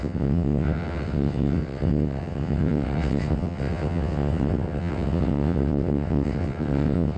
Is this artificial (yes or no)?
yes